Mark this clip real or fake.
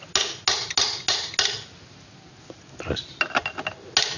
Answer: real